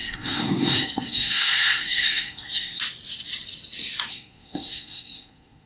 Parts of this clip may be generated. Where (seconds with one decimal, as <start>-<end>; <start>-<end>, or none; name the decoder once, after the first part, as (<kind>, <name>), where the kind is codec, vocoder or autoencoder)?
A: 0.0-2.8 (codec, SNAC); 4.1-5.7